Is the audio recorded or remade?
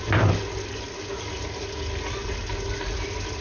recorded